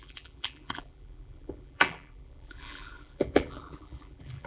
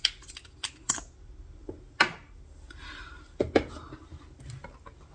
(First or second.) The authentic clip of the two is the second